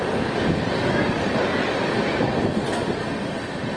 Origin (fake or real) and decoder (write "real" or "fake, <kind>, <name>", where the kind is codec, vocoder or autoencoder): real